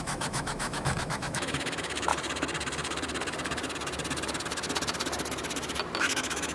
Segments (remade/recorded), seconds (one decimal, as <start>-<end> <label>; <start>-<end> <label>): 0.0-2.1 remade; 2.1-6.0 recorded; 6.0-6.5 remade